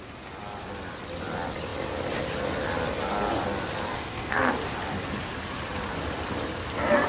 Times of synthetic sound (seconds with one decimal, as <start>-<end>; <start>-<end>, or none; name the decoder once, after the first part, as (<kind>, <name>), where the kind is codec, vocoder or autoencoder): 3.9-4.5 (codec, SNAC)